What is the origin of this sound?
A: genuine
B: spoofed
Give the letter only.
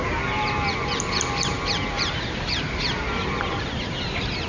B